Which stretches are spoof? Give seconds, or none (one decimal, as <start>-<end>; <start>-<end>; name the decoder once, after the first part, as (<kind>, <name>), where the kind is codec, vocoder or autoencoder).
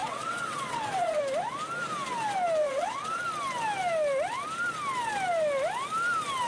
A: 0.0-1.2 (vocoder, WaveNeXt); 2.6-3.2